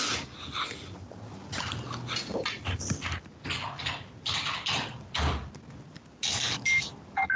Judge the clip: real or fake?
real